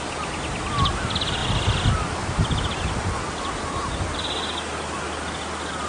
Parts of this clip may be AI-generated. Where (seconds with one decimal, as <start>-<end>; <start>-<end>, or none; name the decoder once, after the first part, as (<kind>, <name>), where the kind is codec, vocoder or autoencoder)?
none